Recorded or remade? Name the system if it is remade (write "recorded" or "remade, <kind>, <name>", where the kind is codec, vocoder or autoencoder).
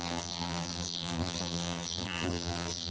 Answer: remade, vocoder, BigVGAN v2